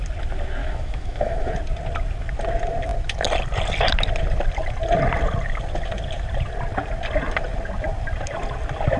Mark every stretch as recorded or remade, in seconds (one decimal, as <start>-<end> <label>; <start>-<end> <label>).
0.0-0.6 recorded; 0.6-1.5 remade; 1.5-9.0 recorded